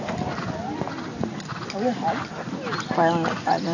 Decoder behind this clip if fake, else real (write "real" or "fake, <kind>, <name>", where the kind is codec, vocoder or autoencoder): real